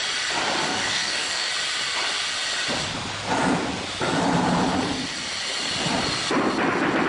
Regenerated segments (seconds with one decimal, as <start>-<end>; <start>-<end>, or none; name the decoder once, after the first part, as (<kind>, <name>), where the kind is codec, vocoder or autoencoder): 0.6-1.5 (codec, DAC)